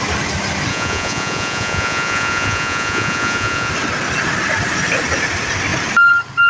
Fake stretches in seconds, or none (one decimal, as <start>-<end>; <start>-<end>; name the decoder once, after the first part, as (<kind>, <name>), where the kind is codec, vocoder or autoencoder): 0.7-3.7 (vocoder, Vocos)